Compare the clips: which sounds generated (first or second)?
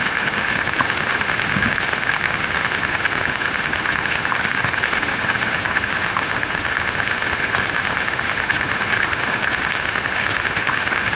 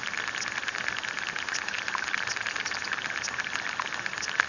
first